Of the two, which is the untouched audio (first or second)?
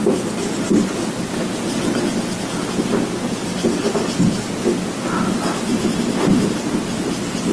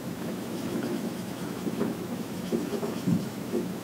first